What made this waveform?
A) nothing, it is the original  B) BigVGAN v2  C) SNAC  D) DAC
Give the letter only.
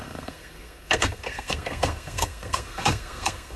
C